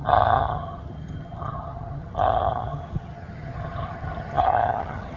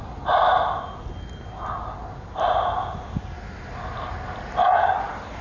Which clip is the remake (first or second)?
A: first